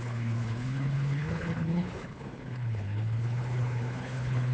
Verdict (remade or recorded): remade